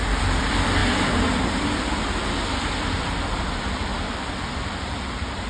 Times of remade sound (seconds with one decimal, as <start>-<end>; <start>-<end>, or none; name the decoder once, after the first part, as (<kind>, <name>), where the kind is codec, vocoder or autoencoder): 0.0-0.8 (vocoder, BigVGAN v2); 2.5-5.5